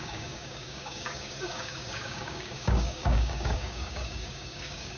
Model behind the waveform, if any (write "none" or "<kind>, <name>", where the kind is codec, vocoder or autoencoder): codec, DAC